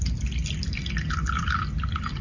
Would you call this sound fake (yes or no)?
no